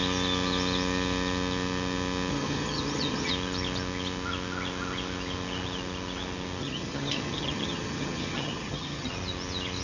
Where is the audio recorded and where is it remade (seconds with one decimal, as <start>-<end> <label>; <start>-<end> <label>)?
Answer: 0.0-2.3 recorded; 2.3-3.3 remade; 3.3-6.6 recorded; 6.6-9.1 remade; 9.1-9.8 recorded